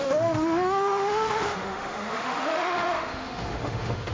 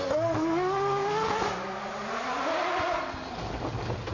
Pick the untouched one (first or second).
second